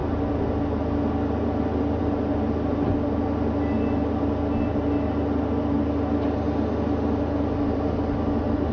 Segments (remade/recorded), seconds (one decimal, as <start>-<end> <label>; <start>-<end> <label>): 0.0-8.7 recorded